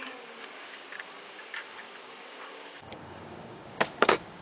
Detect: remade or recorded remade